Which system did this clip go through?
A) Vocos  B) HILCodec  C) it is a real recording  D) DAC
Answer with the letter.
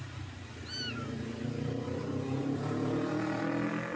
C